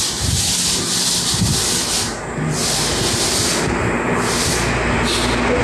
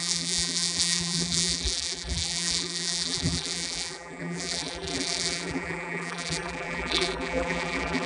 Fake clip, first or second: second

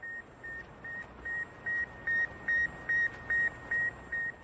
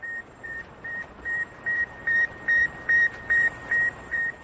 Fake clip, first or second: second